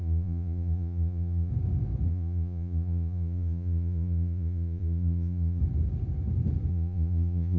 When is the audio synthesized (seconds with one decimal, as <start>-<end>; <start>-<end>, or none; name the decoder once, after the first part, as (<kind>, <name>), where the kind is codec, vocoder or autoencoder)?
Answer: 0.0-1.5 (vocoder, Vocos); 2.1-5.6; 6.7-7.6